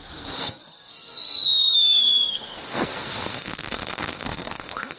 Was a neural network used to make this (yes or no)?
yes